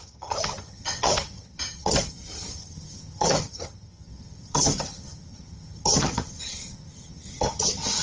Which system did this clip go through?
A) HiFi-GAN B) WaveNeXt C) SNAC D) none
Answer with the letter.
A